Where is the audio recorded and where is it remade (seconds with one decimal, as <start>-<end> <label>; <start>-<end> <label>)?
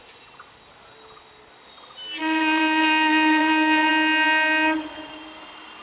0.0-2.2 recorded; 2.2-3.9 remade; 3.9-5.8 recorded